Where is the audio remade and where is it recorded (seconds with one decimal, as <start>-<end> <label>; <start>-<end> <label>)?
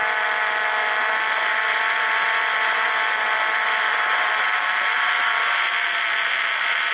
0.0-6.9 recorded